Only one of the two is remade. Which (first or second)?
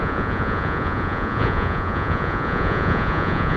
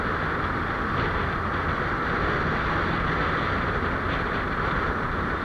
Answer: first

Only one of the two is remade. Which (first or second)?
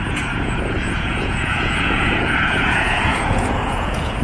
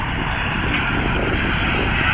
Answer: first